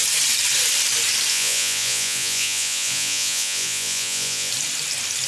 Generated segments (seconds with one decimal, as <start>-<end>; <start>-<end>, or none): 1.3-4.5